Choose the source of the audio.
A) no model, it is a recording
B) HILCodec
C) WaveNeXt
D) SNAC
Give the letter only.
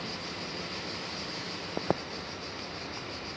A